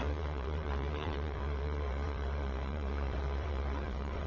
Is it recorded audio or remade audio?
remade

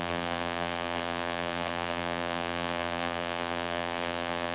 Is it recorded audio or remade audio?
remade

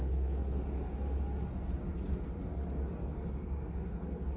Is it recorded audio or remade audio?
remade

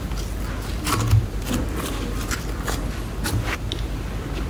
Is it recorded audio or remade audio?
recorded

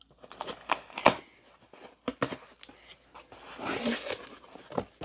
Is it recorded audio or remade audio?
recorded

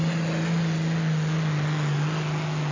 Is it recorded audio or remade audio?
recorded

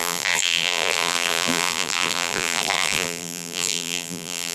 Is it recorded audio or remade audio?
remade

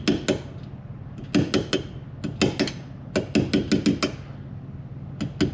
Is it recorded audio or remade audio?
recorded